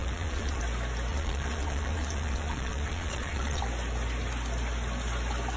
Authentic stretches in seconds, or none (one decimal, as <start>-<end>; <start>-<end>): 0.6-1.1; 3.6-5.6

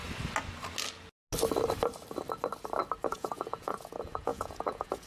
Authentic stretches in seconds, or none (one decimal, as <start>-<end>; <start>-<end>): 0.0-3.1

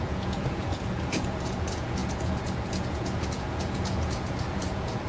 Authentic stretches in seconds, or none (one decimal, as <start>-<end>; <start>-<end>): none

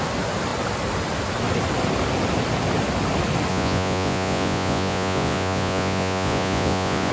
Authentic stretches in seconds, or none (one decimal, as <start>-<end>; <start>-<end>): 0.0-3.5

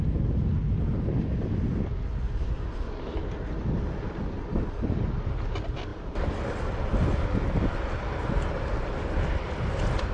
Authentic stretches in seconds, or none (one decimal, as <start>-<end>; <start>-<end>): 0.0-10.1

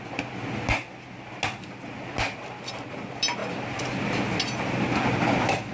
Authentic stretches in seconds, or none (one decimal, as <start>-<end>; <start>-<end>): 0.0-5.7